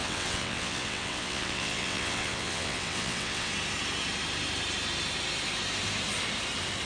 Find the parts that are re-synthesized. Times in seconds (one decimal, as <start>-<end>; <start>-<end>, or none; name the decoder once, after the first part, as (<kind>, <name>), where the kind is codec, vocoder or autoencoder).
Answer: 0.0-3.5 (vocoder, WaveNeXt)